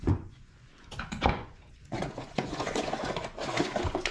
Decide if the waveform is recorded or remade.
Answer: remade